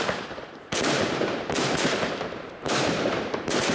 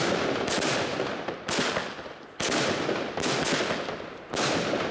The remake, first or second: first